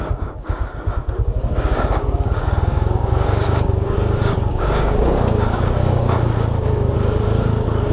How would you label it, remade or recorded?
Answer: remade